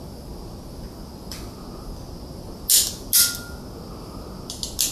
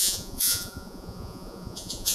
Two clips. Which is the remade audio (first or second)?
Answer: second